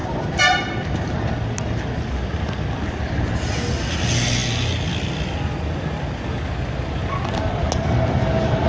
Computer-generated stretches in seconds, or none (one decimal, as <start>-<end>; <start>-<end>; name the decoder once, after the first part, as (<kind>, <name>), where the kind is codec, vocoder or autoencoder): none